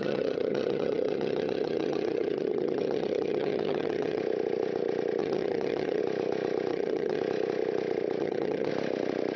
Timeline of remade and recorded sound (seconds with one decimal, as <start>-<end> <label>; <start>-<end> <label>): 0.0-4.2 remade; 4.2-5.2 recorded; 5.2-6.0 remade; 6.0-6.7 recorded; 6.7-7.2 remade; 7.2-8.2 recorded; 8.2-8.7 remade; 8.7-9.4 recorded